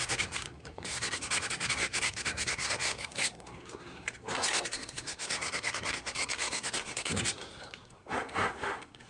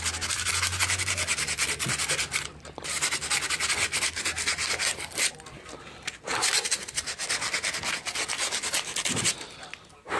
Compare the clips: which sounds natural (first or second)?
second